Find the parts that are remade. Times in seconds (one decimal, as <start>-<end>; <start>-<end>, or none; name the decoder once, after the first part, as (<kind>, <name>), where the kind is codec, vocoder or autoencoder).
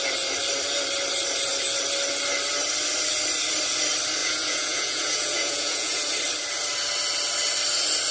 4.2-6.1 (vocoder, Vocos)